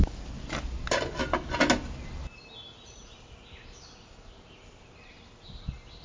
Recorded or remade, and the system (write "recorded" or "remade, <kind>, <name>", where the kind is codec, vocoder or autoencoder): recorded